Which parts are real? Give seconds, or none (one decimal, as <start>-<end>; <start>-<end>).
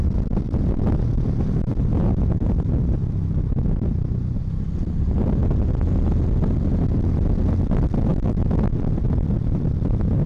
0.0-8.1; 8.9-10.3